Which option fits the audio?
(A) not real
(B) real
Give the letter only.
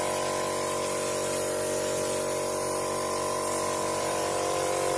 A